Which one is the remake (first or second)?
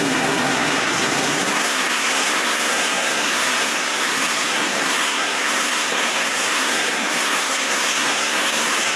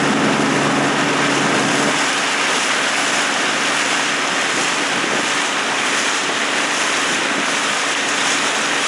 first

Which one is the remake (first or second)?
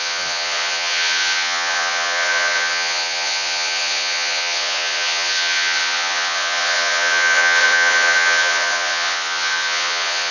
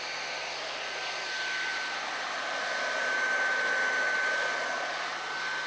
first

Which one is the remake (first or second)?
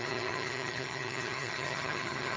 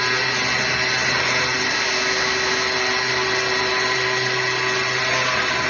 first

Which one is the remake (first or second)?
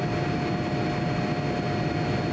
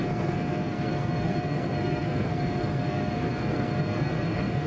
second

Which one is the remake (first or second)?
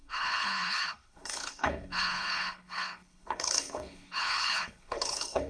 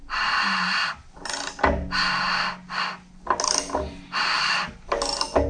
first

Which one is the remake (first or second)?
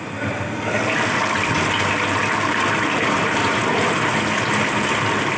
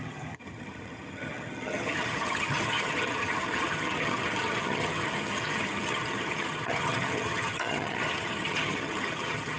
second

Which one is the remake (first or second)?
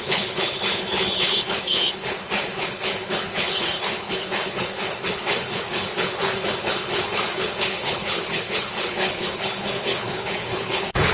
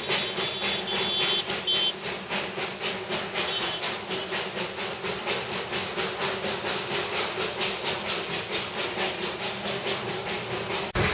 first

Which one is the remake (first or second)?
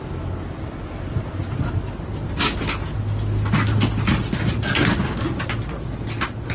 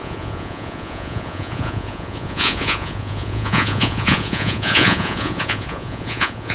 second